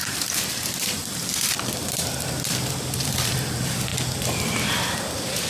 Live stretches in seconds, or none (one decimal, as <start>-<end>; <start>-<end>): 3.9-4.7